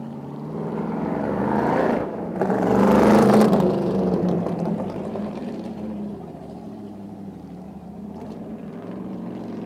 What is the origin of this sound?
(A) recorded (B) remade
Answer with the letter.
B